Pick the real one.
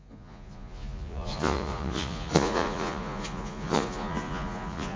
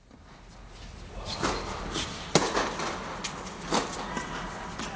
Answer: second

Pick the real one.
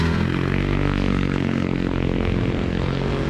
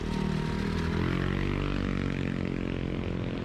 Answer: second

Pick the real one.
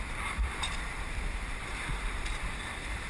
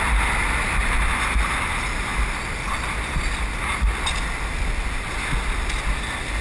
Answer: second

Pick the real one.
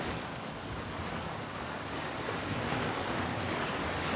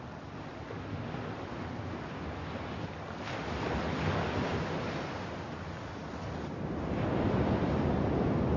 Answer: second